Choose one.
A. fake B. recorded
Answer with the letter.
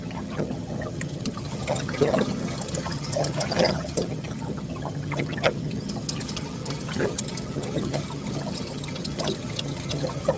A